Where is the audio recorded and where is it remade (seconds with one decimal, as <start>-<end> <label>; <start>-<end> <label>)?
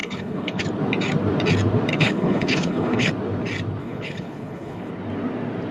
0.0-0.6 remade; 0.6-1.9 recorded; 1.9-3.1 remade; 3.1-3.8 recorded; 3.8-4.9 remade; 4.9-5.7 recorded